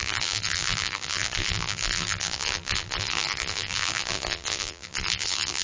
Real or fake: fake